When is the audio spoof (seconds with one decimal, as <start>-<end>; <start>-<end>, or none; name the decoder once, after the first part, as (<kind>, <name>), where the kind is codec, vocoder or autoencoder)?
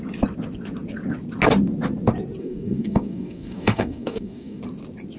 2.4-4.6 (codec, DAC)